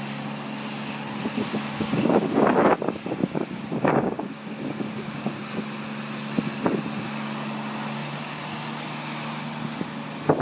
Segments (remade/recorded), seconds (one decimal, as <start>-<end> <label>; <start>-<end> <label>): 0.0-1.5 recorded; 1.5-2.5 remade; 2.5-3.2 recorded; 3.2-5.4 remade; 5.4-10.4 recorded